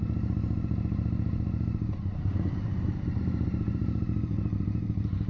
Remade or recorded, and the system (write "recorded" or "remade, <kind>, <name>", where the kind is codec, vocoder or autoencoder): remade, vocoder, BigVGAN v2